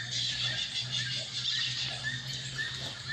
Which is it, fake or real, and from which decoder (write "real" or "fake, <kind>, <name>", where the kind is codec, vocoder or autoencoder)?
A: real